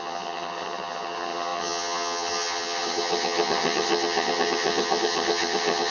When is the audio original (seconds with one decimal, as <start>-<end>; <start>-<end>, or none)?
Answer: none